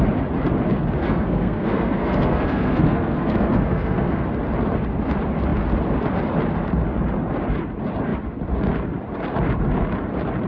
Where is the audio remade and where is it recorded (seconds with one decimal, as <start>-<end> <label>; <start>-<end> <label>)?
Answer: 0.0-1.0 recorded; 1.0-4.2 remade; 4.2-10.5 recorded